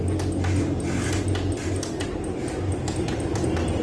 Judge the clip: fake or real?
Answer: real